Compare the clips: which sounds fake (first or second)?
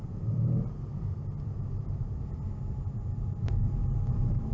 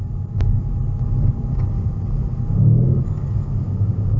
first